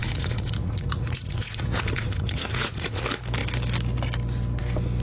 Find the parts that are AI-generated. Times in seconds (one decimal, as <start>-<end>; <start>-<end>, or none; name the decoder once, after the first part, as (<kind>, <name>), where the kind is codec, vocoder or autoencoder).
0.0-3.0 (vocoder, Vocos)